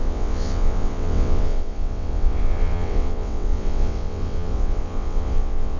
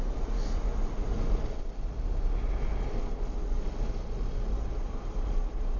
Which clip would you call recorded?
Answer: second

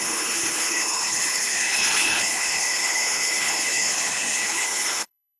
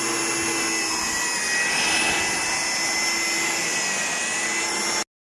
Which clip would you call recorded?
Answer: second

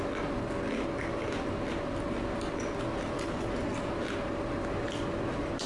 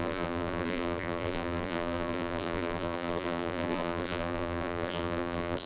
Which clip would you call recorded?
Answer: first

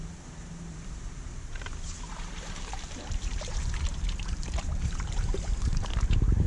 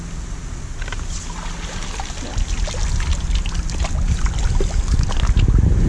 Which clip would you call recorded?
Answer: second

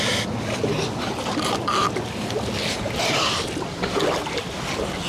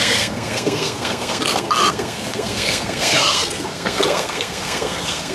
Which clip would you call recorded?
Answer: first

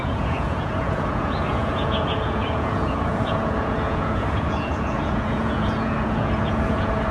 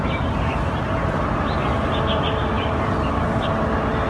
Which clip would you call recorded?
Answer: second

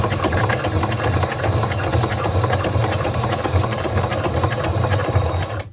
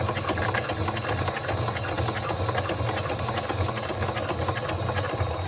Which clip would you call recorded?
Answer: second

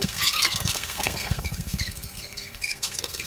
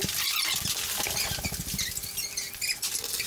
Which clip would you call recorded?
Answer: second